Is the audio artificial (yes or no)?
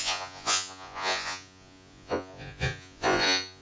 yes